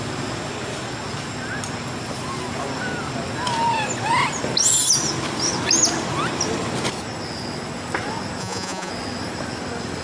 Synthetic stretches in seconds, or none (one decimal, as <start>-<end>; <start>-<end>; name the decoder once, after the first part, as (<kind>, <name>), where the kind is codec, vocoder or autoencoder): 8.4-8.9 (vocoder, Vocos)